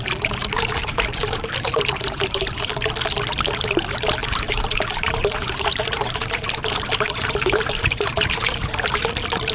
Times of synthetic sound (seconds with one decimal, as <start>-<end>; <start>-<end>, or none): 0.4-2.7; 4.2-8.9